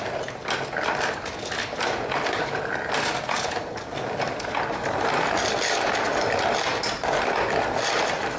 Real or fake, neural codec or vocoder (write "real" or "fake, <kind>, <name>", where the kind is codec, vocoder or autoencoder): real